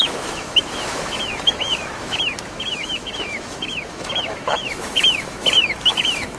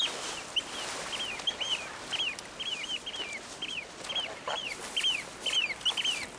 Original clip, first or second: second